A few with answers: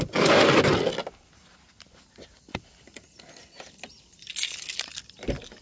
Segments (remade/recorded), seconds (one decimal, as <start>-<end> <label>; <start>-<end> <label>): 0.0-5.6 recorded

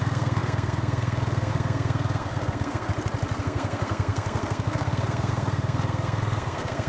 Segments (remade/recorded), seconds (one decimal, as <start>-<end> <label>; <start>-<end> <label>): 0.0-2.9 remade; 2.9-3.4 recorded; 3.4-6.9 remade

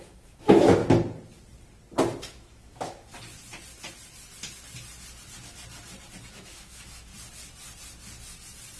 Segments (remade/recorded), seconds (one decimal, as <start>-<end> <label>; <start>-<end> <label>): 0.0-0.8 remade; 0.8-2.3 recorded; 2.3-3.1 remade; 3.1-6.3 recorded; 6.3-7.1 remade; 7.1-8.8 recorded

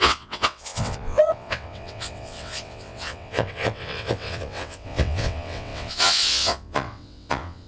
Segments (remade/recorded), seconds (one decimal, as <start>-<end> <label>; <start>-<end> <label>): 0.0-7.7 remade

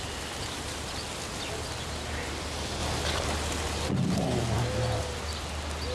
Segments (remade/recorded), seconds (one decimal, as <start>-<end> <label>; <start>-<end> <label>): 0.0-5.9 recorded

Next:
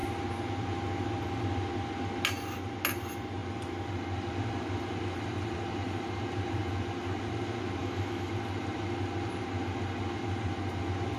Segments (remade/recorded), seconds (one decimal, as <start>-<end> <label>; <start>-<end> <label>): 0.0-7.8 recorded; 7.8-8.3 remade; 8.3-11.2 recorded